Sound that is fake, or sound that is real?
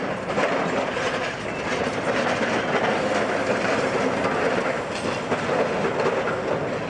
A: real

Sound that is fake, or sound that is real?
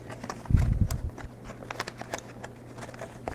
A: real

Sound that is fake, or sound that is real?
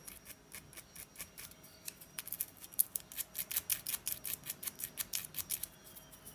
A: real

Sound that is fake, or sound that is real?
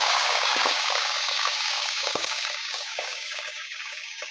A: fake